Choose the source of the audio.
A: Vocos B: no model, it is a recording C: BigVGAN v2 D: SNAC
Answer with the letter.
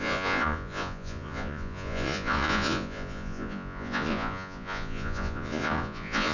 A